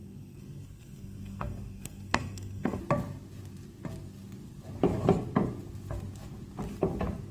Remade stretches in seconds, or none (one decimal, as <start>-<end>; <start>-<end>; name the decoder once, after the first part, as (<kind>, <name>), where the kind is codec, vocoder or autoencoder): 0.0-2.8 (codec, SNAC)